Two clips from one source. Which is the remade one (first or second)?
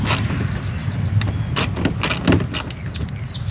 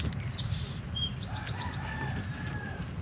second